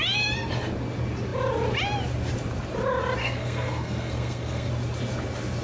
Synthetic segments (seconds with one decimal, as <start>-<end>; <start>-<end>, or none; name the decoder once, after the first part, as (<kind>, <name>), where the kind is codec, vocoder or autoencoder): 3.2-4.7 (codec, SNAC)